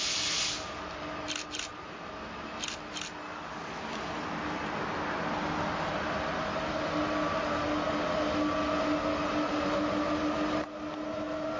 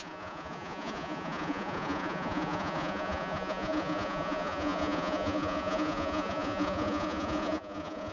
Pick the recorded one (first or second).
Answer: first